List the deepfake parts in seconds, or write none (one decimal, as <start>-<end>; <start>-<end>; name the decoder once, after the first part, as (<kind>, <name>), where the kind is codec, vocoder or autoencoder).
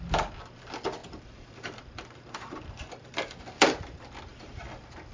1.0-3.4 (vocoder, BigVGAN v2)